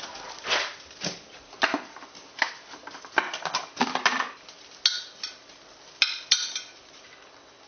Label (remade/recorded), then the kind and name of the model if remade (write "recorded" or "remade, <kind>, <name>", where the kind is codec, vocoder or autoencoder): recorded